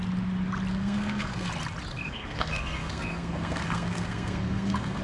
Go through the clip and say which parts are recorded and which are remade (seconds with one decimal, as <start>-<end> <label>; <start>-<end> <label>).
0.0-0.7 recorded; 0.7-1.5 remade; 1.5-1.9 recorded; 1.9-5.0 remade